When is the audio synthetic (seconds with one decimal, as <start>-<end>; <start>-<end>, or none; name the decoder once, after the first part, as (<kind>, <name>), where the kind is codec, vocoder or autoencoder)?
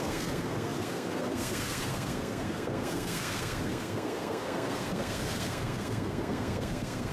0.0-7.1 (codec, SNAC)